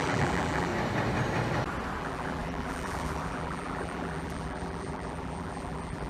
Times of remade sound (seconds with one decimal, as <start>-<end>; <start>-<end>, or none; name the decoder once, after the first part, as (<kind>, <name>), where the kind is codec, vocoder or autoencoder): 0.0-0.7 (vocoder, BigVGAN v2); 2.0-6.1